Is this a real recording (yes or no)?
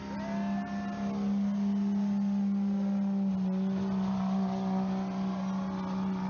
yes